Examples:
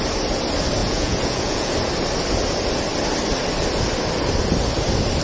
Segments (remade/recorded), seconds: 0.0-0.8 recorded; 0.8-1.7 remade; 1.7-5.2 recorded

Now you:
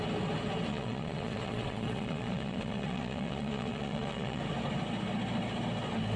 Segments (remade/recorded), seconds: 0.0-0.7 recorded; 0.7-4.4 remade; 4.4-6.2 recorded